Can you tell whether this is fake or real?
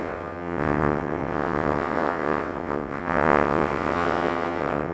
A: fake